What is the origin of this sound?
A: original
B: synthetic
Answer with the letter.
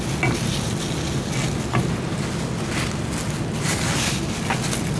A